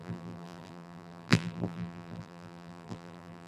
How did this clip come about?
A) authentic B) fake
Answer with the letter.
B